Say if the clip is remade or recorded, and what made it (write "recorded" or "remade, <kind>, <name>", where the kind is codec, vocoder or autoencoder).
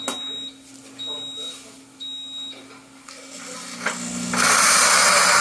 recorded